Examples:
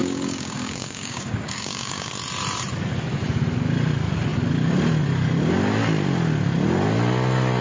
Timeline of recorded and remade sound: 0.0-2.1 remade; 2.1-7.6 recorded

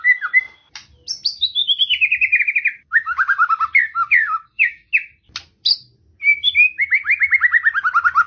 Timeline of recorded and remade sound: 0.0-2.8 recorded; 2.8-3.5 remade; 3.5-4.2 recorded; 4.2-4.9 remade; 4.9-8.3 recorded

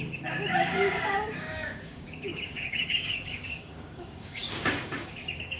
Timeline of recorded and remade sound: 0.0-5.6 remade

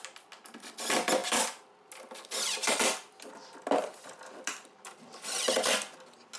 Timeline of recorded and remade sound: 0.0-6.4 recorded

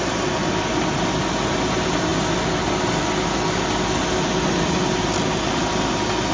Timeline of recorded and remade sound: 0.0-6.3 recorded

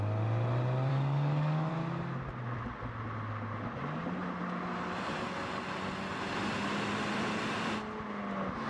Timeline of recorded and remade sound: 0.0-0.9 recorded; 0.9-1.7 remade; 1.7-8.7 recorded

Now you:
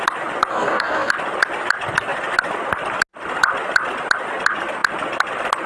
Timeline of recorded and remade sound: 0.0-0.5 recorded; 0.5-1.1 remade; 1.1-5.7 recorded

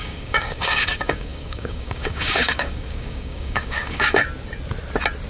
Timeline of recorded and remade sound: 0.0-4.2 remade; 4.2-5.3 recorded